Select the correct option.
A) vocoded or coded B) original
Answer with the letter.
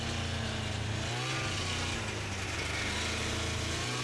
B